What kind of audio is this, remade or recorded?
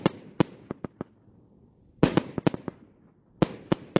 recorded